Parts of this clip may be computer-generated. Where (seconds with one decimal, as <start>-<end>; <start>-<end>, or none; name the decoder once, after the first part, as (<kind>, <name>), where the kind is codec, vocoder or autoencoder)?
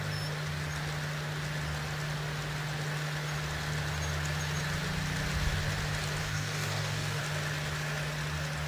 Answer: 6.2-7.2 (codec, DAC)